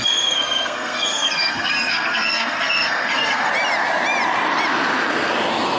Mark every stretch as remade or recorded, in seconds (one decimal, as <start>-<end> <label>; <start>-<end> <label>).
0.0-3.5 remade; 3.5-5.8 recorded